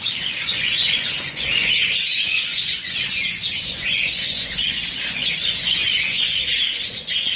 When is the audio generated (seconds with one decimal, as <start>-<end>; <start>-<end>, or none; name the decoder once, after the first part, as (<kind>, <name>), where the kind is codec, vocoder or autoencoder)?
0.0-7.4 (vocoder, Vocos)